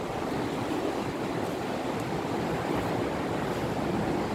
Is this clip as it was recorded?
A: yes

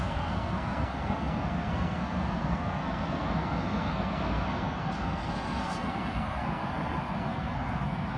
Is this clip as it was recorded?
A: no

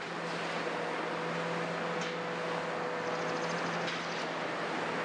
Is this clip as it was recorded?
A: yes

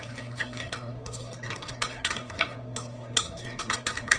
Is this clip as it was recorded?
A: no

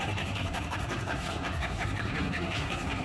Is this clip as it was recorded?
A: no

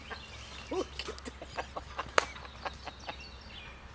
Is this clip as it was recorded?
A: yes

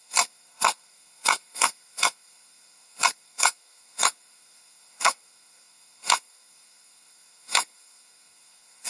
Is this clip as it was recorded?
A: no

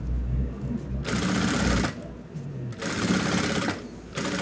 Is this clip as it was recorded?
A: yes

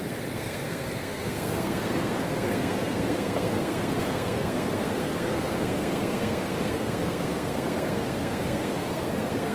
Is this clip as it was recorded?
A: no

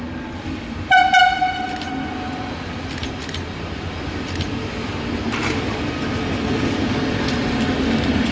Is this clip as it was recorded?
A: yes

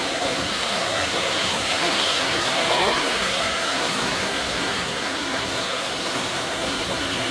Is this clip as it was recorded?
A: no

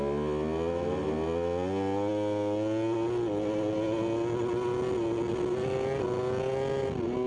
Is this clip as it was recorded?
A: yes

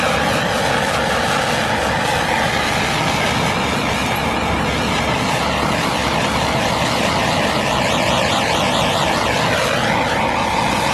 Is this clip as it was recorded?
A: yes